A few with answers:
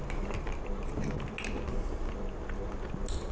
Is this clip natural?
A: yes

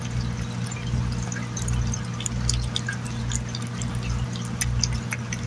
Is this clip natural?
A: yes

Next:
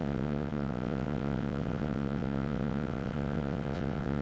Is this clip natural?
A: no